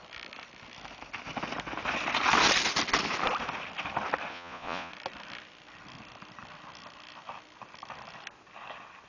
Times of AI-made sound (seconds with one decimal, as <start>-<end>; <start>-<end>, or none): 4.3-4.9